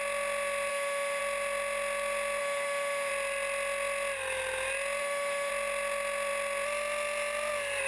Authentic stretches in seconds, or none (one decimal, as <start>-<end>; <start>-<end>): 0.0-0.7; 1.2-2.4; 3.1-5.0; 5.5-7.9